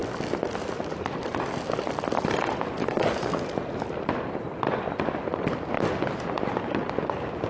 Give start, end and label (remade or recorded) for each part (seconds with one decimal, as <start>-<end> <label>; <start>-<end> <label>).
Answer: 0.0-2.8 recorded; 2.8-3.3 remade; 3.3-7.5 recorded